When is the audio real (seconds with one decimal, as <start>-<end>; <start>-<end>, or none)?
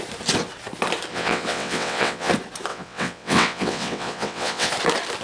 0.0-1.1; 2.3-2.7; 4.7-5.2